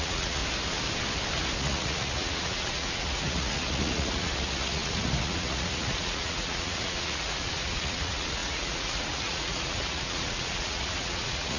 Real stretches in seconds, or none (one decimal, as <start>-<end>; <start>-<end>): 0.4-1.6